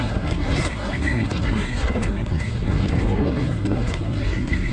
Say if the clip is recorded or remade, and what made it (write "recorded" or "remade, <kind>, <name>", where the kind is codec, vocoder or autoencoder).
remade, codec, SNAC